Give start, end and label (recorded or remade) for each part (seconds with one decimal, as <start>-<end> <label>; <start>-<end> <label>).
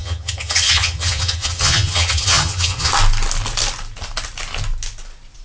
0.0-2.9 remade; 2.9-5.4 recorded